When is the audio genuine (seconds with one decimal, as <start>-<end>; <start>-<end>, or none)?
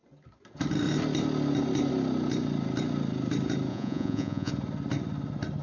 0.0-3.7; 4.5-5.6